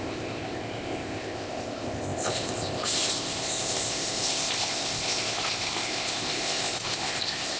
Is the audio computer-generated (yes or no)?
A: yes